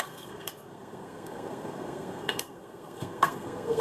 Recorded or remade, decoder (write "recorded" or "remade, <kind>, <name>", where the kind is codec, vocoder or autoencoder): remade, codec, SNAC